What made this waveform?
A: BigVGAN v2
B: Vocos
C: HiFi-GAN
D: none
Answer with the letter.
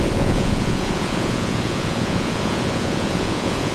B